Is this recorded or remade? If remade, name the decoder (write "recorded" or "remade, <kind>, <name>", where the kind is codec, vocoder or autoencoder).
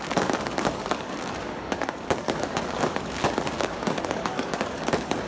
remade, codec, DAC